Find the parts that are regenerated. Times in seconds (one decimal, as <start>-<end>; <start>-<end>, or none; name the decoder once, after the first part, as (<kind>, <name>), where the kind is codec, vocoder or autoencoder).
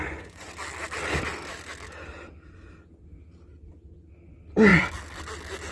0.0-0.5 (vocoder, Vocos)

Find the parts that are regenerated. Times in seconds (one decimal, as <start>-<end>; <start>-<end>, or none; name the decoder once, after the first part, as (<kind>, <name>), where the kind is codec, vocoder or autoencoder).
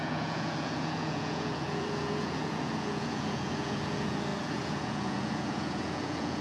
0.0-6.4 (vocoder, Vocos)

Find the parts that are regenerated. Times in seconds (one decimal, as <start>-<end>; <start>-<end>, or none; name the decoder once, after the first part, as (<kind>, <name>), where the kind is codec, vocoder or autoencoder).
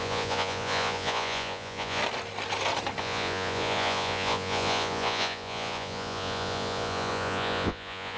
0.0-2.0 (vocoder, Vocos); 3.0-8.2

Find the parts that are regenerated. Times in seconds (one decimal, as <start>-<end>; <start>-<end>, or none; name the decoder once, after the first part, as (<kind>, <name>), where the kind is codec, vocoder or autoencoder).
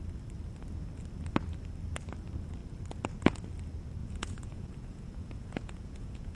4.0-6.4 (vocoder, Vocos)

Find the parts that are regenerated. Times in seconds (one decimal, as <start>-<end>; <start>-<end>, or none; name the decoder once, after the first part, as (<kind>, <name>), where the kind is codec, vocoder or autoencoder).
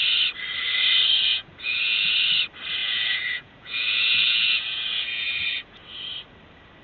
1.3-2.1 (vocoder, Vocos); 2.8-5.8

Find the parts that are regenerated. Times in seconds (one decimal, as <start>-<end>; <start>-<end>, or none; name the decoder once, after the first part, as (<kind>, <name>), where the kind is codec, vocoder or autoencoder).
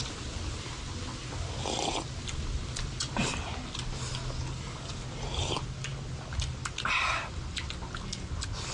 none